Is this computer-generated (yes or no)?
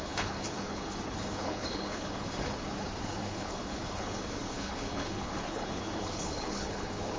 yes